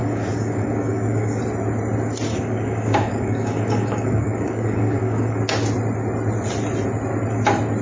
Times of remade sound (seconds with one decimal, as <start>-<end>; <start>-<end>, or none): 0.0-1.4; 2.3-5.4